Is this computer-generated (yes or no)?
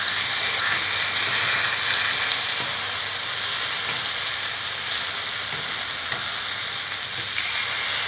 no